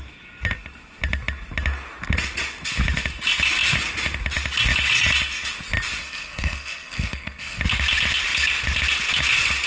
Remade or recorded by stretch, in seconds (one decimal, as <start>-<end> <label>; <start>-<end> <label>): 0.0-6.0 recorded; 6.0-7.6 remade; 7.6-9.7 recorded